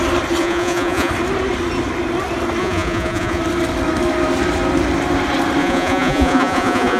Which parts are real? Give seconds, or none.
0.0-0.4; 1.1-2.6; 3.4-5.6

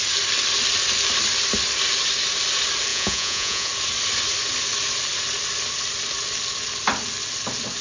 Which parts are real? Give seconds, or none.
0.0-2.9; 3.7-7.8

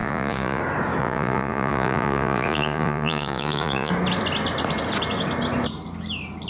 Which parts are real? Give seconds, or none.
0.6-1.0; 3.9-6.5

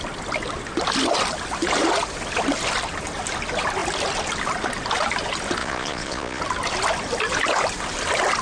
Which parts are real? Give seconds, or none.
0.0-5.6; 6.4-8.4

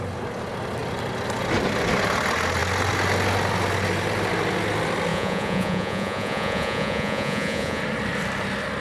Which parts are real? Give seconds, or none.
0.0-5.1; 7.8-8.8

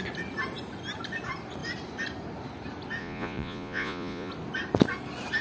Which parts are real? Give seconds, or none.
0.0-3.0; 4.3-5.4

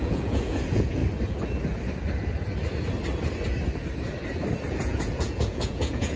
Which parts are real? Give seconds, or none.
1.0-4.7